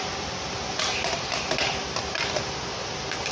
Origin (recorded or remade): recorded